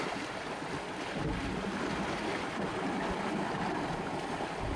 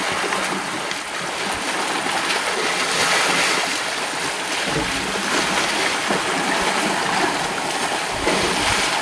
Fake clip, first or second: first